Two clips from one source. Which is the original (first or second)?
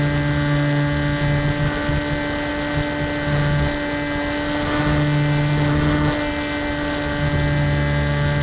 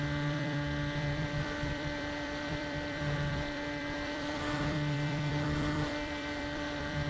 first